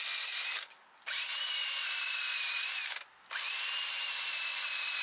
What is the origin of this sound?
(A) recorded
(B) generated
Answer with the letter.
A